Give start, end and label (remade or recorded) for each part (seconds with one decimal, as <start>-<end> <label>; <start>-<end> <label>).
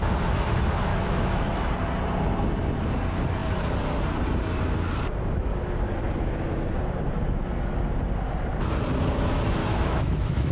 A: 0.0-0.9 recorded; 0.9-1.7 remade; 1.7-9.6 recorded; 9.6-10.5 remade